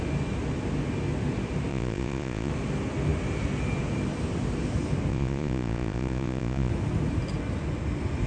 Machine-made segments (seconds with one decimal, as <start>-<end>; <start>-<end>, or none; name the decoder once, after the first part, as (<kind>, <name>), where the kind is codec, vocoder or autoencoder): 1.7-2.5 (vocoder, Vocos); 5.1-6.7